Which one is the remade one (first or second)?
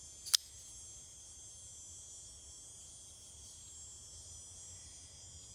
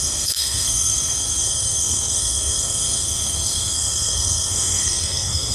second